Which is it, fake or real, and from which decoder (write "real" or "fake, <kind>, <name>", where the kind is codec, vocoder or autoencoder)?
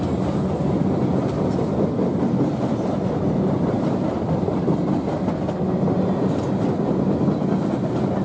real